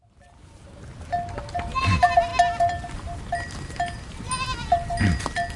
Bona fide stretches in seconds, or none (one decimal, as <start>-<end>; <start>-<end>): 0.9-1.8; 2.3-5.6

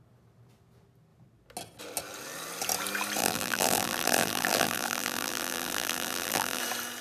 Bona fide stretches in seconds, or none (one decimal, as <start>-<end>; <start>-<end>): 0.0-3.2; 6.6-7.0

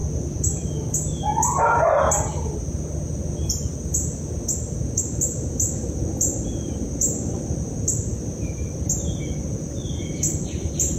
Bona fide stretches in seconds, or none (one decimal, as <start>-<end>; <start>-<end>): 0.0-5.0; 8.1-9.4

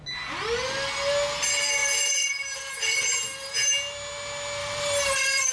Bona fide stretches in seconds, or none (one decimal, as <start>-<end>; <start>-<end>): 0.0-1.8; 2.7-4.6

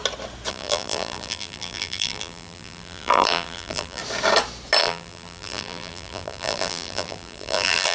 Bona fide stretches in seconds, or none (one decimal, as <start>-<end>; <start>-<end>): 0.0-0.5; 4.0-4.8

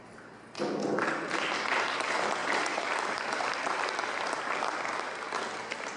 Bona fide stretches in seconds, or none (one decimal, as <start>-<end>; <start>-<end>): 0.0-2.4; 3.8-6.0

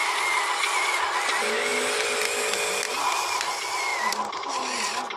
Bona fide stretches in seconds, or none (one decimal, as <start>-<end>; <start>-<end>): 0.0-5.2